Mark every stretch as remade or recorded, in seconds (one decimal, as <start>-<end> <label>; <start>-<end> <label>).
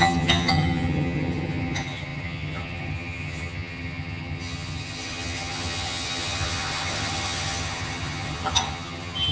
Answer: 0.0-9.3 remade